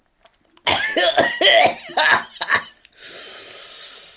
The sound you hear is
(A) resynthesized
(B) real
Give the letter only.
B